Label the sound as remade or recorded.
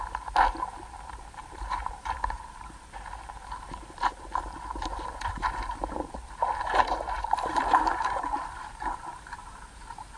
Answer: remade